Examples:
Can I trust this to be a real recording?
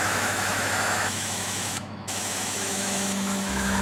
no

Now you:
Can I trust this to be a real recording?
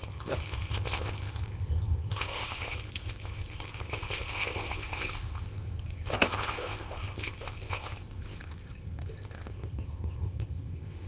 no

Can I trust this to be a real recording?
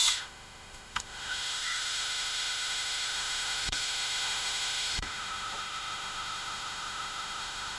no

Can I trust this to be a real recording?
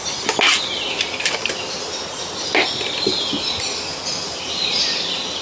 yes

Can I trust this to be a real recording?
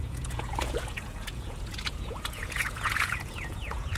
no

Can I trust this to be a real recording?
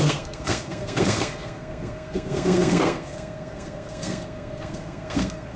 no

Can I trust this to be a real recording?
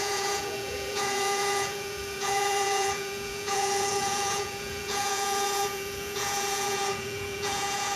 no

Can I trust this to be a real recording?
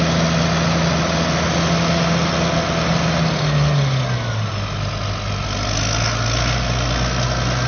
yes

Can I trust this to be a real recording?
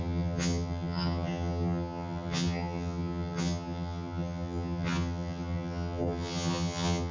no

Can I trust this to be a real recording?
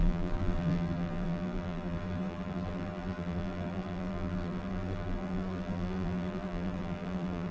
no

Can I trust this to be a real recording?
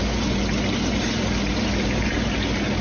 yes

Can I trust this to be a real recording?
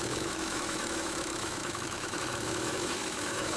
no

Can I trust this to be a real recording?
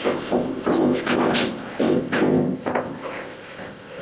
no